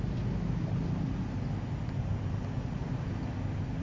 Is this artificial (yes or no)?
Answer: no